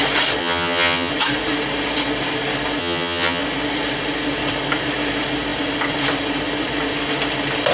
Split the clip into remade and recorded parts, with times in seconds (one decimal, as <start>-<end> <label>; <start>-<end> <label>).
0.0-0.4 recorded; 0.4-1.1 remade; 1.1-2.8 recorded; 2.8-3.4 remade; 3.4-7.7 recorded